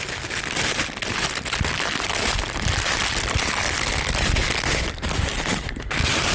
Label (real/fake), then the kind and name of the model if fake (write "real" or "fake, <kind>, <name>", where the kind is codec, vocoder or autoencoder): real